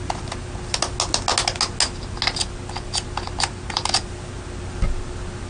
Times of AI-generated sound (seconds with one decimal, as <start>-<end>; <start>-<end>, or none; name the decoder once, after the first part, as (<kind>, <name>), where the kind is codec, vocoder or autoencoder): none